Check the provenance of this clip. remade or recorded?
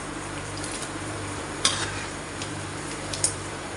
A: remade